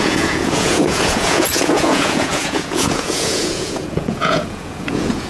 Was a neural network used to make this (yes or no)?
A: yes